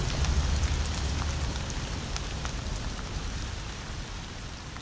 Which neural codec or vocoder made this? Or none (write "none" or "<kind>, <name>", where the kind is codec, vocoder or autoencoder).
vocoder, BigVGAN v2